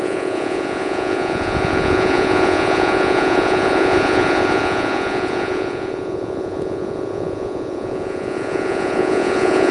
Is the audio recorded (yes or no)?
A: no